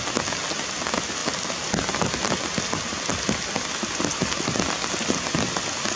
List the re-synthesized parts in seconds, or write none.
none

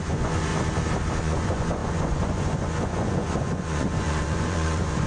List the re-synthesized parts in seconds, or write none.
0.0-0.5; 1.2-5.1